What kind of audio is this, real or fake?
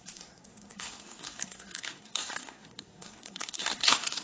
fake